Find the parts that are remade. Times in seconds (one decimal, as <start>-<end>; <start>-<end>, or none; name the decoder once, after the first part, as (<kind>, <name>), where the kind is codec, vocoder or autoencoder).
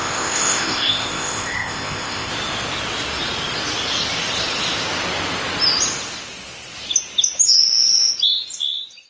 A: 0.0-2.3 (codec, ZipCodec)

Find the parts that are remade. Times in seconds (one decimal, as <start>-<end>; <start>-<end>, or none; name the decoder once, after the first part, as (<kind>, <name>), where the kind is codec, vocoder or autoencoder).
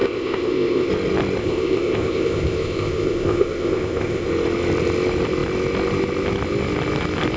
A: 0.0-0.9 (codec, ZipCodec); 1.4-4.3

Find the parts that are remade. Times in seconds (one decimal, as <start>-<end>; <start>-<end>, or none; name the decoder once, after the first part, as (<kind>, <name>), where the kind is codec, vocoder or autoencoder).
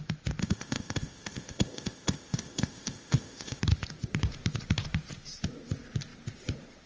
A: 0.4-3.6 (codec, ZipCodec)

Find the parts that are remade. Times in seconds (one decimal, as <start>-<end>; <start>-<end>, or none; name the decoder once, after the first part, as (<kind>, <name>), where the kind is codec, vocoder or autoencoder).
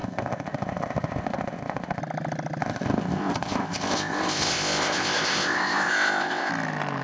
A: 0.0-2.0 (codec, ZipCodec); 2.6-6.5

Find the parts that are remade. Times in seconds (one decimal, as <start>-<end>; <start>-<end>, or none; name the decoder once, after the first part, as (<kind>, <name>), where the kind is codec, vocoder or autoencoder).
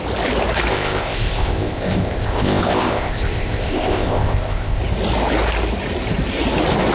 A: 0.7-4.8 (codec, ZipCodec)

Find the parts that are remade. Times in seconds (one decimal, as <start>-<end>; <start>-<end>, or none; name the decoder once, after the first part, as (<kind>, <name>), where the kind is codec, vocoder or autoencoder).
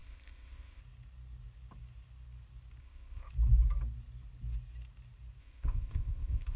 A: 0.0-0.8 (codec, ZipCodec); 2.8-3.3; 5.4-6.6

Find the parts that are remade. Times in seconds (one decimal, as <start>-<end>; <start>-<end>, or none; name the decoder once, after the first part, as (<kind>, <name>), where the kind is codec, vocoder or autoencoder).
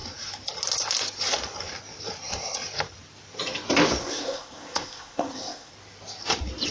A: 4.0-5.7 (codec, ZipCodec)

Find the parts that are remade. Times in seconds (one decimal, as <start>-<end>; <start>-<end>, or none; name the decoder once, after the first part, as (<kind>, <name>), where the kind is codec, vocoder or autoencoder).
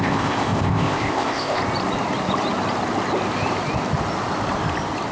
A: 0.0-1.6 (codec, ZipCodec)